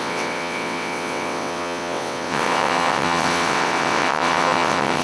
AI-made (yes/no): yes